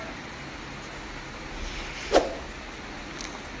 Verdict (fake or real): real